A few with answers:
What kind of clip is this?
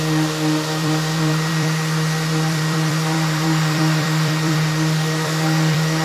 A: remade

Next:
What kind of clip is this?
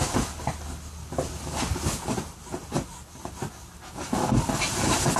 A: recorded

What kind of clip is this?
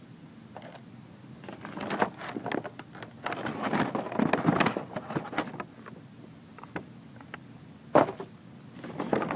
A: recorded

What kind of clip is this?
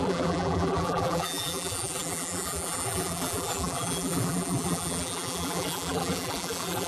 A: remade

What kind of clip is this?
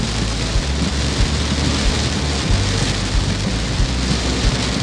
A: recorded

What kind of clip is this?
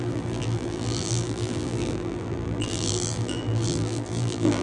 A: remade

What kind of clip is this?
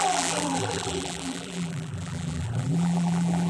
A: remade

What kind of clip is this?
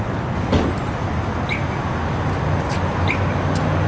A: recorded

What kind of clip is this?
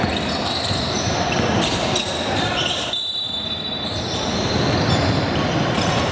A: recorded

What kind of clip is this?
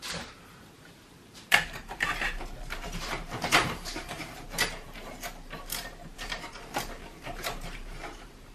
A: remade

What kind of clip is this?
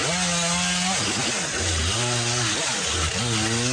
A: recorded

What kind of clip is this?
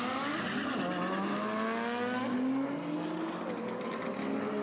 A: recorded